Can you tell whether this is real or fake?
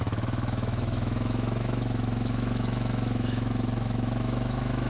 fake